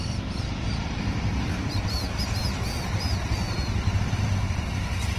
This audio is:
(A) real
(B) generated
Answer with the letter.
B